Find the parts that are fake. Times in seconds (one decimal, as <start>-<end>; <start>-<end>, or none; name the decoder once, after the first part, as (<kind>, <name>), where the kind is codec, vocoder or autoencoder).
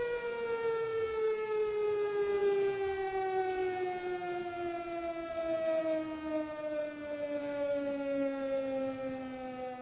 7.4-9.2 (codec, DAC)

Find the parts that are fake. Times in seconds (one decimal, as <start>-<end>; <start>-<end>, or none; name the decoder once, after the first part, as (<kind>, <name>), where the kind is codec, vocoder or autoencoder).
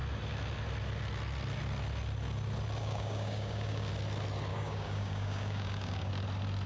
2.8-3.9 (codec, DAC); 4.5-6.1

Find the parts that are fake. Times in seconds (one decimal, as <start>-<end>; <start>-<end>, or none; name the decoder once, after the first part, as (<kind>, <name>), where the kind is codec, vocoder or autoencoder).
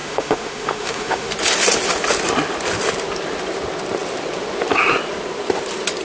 0.0-1.3 (autoencoder, DAC-VAE)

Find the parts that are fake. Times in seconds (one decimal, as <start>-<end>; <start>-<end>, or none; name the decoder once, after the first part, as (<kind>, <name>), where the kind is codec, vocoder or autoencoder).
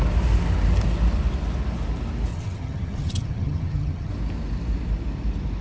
2.3-4.1 (vocoder, HiFi-GAN)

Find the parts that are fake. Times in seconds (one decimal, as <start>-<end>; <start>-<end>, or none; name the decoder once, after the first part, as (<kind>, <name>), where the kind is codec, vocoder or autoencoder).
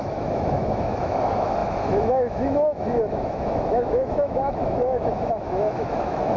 0.0-6.4 (autoencoder, DAC-VAE)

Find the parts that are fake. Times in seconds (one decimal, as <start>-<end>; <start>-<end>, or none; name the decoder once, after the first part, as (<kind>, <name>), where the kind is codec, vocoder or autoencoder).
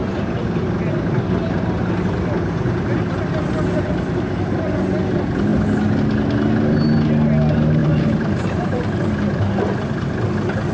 7.8-9.1 (vocoder, BigVGAN v2)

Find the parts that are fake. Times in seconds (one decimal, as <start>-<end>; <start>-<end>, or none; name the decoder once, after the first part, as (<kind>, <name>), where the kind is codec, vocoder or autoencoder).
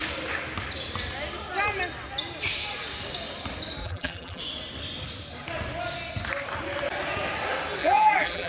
3.8-4.4 (vocoder, BigVGAN v2); 7.8-8.5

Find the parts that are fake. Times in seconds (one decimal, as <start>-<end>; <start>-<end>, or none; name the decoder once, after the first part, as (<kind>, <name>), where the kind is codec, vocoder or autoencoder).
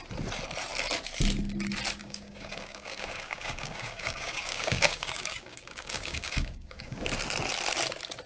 2.0-7.0 (codec, DAC)